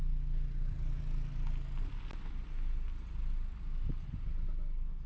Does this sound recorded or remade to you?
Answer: recorded